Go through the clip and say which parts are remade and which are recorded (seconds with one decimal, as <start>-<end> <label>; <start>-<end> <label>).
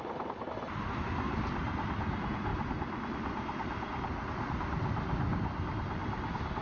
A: 0.0-6.6 recorded